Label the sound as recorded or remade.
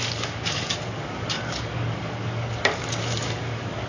remade